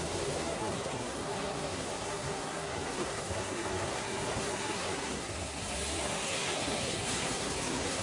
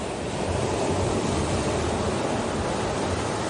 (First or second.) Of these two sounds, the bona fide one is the second